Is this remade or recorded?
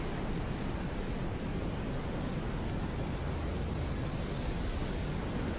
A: recorded